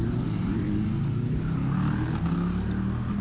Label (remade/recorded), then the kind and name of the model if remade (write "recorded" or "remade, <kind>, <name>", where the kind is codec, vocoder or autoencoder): recorded